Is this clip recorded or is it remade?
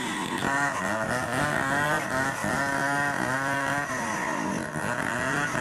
recorded